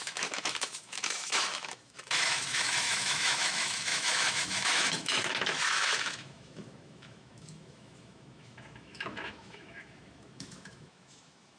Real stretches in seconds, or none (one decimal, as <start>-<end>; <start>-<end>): none